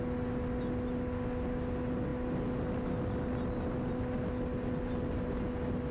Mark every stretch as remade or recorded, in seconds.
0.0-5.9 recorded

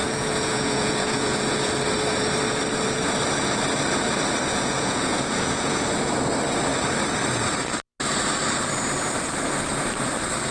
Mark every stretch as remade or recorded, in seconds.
0.0-1.7 remade; 1.7-4.5 recorded; 4.5-6.1 remade; 6.1-10.5 recorded

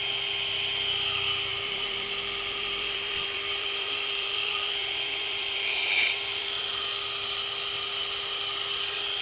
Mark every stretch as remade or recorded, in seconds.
0.0-1.5 recorded; 1.5-6.7 remade; 6.7-9.2 recorded

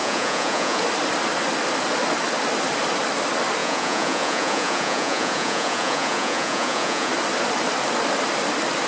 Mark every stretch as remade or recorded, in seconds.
0.0-0.8 remade; 0.8-3.6 recorded; 3.6-7.1 remade; 7.1-8.9 recorded

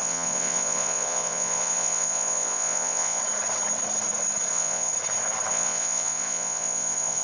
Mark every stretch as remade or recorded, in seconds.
0.0-3.2 remade; 3.2-4.5 recorded; 4.5-4.9 remade; 4.9-5.5 recorded; 5.5-7.2 remade

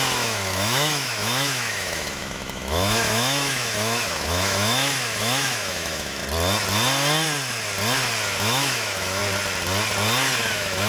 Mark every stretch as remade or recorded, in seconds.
0.0-6.2 remade; 6.2-8.4 recorded; 8.4-9.2 remade; 9.2-10.5 recorded; 10.5-10.9 remade

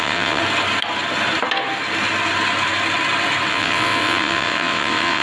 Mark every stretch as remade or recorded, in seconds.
0.0-0.4 remade; 0.4-3.5 recorded; 3.5-5.2 remade

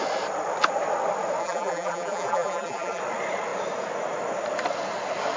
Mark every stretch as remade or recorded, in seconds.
0.0-1.4 recorded; 1.4-3.0 remade; 3.0-5.4 recorded